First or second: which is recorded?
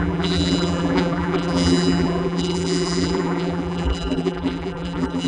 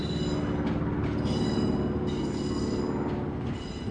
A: second